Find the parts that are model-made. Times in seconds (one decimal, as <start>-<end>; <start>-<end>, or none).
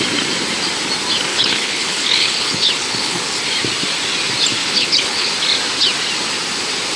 1.3-3.4; 4.6-5.3